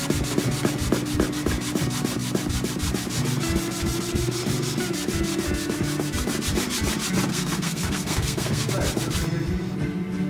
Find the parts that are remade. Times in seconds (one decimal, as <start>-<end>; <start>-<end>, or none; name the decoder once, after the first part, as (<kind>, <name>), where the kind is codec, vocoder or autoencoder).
7.3-8.7 (codec, SNAC)